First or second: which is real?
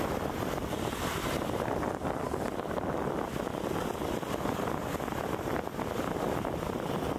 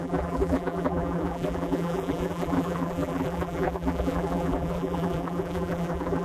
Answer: first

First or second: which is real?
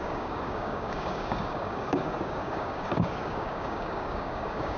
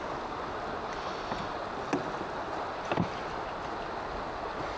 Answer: second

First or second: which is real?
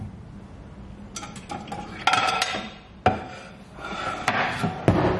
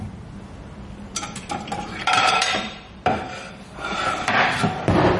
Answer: first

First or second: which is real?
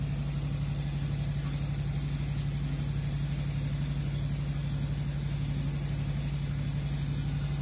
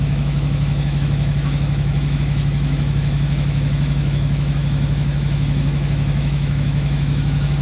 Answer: first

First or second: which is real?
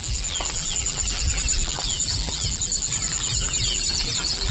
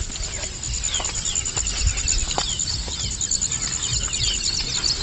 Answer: second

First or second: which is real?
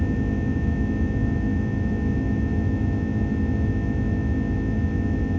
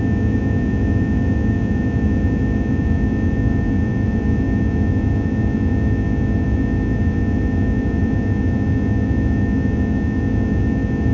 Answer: first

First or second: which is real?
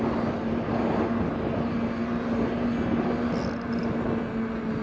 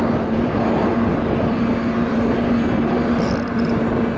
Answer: first